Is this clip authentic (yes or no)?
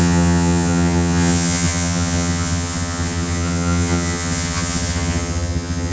no